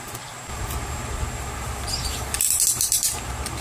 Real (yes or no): no